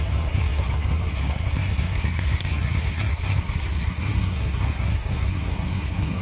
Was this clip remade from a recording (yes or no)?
yes